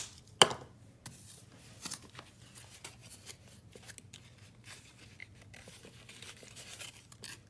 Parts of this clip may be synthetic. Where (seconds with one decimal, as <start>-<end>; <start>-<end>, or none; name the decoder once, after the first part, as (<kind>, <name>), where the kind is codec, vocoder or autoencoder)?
none